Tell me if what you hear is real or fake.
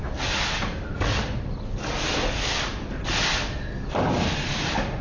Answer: real